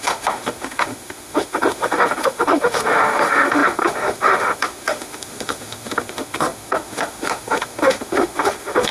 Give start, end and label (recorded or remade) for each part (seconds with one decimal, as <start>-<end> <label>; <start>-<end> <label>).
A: 0.0-8.9 remade